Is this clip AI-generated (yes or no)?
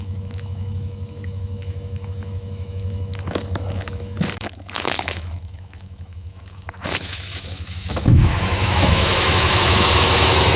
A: yes